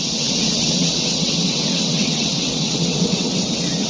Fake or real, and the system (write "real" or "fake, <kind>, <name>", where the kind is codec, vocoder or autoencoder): fake, vocoder, WaveNeXt